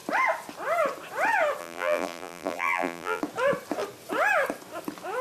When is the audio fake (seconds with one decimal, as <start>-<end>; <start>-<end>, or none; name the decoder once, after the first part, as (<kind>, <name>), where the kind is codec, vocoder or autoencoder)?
1.6-3.2 (vocoder, BigVGAN v2)